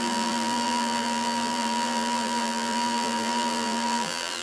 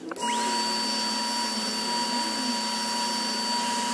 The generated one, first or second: first